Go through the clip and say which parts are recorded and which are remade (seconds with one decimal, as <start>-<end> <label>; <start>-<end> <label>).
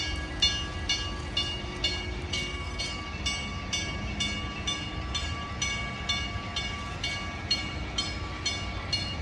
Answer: 0.0-2.3 recorded; 2.3-2.8 remade; 2.8-9.2 recorded